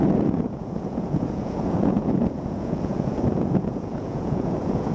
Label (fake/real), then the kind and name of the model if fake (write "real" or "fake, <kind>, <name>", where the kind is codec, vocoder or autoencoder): fake, vocoder, Vocos